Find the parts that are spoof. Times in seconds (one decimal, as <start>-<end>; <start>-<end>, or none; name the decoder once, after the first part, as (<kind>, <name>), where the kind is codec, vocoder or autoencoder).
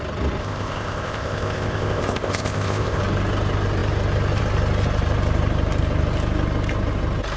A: 0.4-3.0 (codec, ZipCodec)